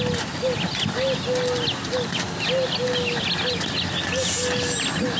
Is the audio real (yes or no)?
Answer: yes